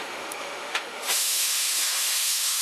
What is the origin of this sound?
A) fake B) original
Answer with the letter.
A